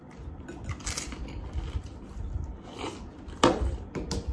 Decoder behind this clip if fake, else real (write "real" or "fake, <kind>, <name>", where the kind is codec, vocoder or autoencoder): real